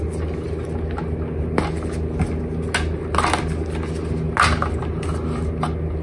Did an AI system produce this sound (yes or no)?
no